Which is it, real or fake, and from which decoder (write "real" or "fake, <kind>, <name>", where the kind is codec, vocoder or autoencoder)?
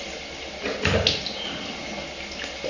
real